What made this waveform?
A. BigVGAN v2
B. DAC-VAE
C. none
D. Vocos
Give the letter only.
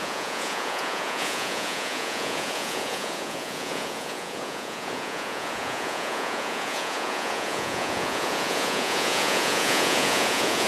D